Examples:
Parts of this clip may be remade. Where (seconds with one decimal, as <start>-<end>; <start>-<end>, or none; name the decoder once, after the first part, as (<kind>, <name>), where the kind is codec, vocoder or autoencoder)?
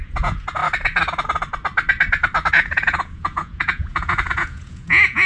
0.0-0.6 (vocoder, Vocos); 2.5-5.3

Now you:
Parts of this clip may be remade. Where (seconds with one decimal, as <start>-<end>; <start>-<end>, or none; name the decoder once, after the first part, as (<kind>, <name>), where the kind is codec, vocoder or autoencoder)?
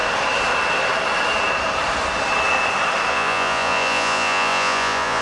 3.1-5.2 (vocoder, Vocos)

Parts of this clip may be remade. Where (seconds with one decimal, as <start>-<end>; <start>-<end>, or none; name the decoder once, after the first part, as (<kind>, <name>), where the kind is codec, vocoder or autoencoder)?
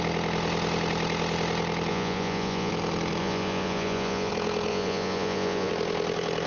1.9-2.7 (vocoder, Vocos); 3.2-4.3; 4.7-5.7